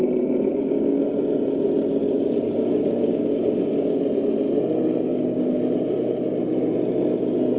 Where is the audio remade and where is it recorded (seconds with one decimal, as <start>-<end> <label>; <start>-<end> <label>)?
0.0-0.5 recorded; 0.5-1.0 remade; 1.0-2.0 recorded; 2.0-4.0 remade; 4.0-5.1 recorded; 5.1-5.6 remade; 5.6-7.6 recorded

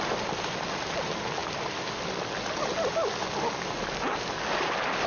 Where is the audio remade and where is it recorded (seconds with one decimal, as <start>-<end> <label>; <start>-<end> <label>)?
0.0-5.1 recorded

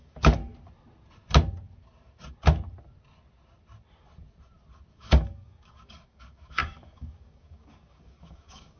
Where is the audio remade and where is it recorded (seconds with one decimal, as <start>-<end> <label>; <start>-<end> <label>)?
0.0-0.4 remade; 0.4-4.9 recorded; 4.9-8.8 remade

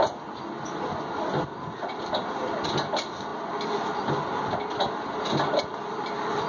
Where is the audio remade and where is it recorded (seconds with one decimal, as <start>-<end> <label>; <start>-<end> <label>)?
0.0-6.5 recorded

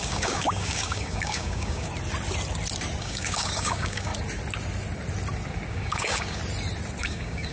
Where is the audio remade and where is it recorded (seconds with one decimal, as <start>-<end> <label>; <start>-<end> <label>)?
0.0-1.9 remade; 1.9-3.0 recorded; 3.0-4.1 remade; 4.1-5.7 recorded; 5.7-6.4 remade; 6.4-7.0 recorded; 7.0-7.5 remade

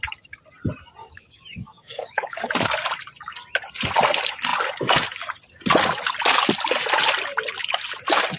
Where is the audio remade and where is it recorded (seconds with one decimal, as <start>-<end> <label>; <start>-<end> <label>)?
0.0-1.0 recorded; 1.0-2.5 remade; 2.5-8.4 recorded